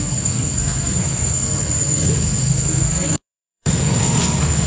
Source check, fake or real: fake